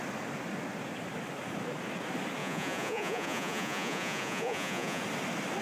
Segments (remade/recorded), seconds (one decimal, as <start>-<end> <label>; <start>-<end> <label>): 0.0-2.4 recorded; 2.4-5.0 remade; 5.0-5.6 recorded